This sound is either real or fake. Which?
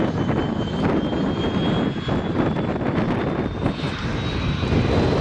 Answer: real